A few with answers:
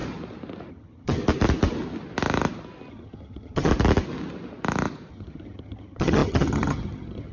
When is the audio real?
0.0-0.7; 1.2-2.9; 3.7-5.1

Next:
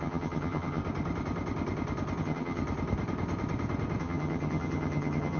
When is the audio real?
0.8-2.2; 2.6-4.0

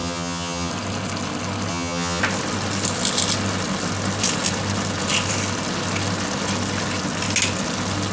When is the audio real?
0.7-1.7; 2.2-8.1

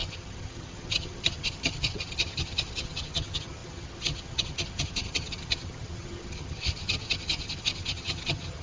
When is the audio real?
none

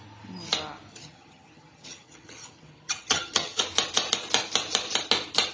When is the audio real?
0.0-0.9; 3.6-5.5

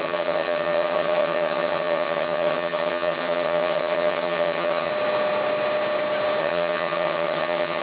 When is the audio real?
4.9-6.4

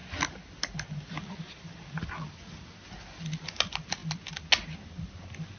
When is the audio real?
0.0-5.6

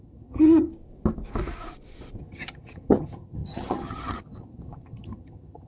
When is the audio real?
0.7-2.2